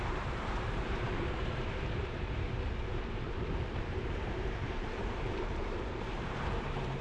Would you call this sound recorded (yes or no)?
no